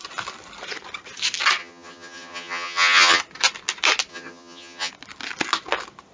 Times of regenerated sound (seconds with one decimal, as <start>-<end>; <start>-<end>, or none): 1.6-3.2; 4.1-4.9